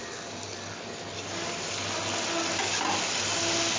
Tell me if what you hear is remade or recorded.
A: recorded